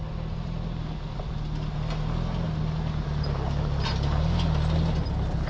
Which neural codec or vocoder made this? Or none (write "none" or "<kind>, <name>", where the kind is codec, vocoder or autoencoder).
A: none